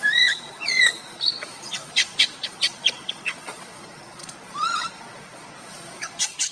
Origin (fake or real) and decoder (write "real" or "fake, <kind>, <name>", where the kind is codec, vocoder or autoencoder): fake, vocoder, Vocos